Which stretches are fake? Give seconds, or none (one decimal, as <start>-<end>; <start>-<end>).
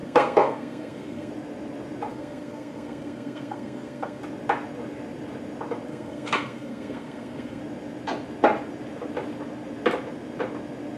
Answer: 0.0-1.3; 2.1-4.2; 5.9-7.6